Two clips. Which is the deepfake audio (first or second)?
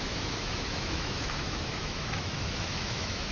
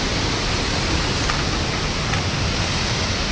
first